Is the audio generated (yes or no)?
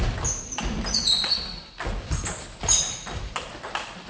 no